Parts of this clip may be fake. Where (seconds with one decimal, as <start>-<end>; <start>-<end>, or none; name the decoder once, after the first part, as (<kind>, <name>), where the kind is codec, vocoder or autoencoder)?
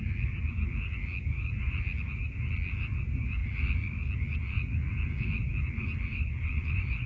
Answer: 6.1-7.1 (vocoder, Vocos)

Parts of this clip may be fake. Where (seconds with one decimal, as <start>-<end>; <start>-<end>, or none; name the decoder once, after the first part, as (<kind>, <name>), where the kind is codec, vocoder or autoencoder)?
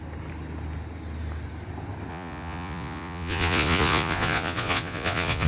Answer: 2.1-5.5 (vocoder, Vocos)